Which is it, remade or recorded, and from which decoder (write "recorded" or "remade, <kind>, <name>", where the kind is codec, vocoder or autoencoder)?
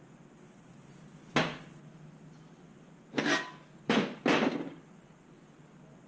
recorded